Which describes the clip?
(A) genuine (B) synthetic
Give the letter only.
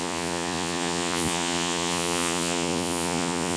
B